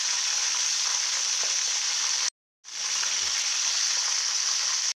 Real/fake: real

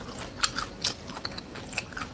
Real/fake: real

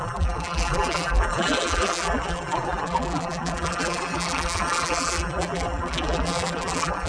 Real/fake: fake